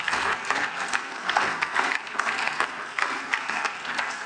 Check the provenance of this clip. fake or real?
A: fake